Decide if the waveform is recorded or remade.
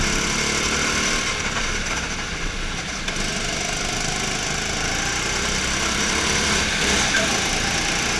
recorded